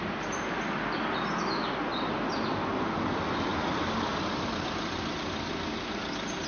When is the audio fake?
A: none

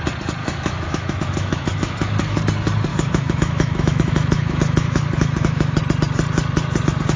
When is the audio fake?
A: 0.4-2.4 (autoencoder, DAC-VAE); 2.9-5.8

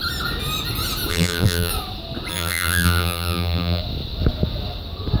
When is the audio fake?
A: 1.1-1.7 (vocoder, BigVGAN v2); 2.3-3.8

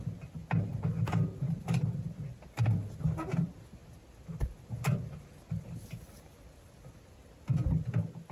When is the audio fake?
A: none

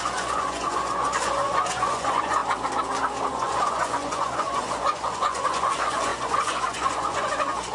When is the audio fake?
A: 0.0-2.4 (vocoder, Vocos); 3.3-7.7

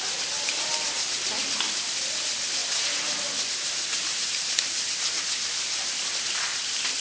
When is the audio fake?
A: none

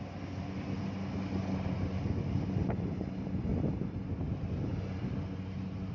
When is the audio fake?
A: none